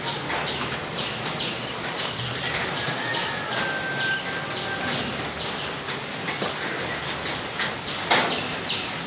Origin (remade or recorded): recorded